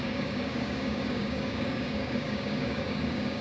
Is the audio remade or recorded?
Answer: remade